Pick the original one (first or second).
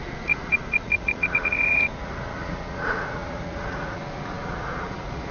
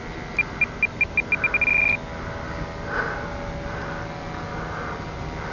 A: second